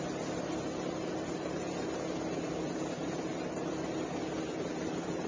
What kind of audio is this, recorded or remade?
recorded